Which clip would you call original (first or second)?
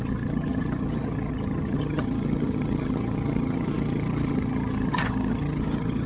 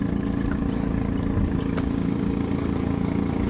second